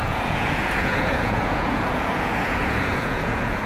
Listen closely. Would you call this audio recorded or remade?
remade